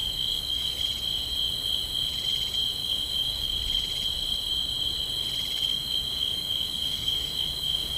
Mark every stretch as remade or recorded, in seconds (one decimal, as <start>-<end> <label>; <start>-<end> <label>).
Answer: 0.0-0.8 remade; 0.8-2.8 recorded; 2.8-3.6 remade; 3.6-5.7 recorded; 5.7-8.0 remade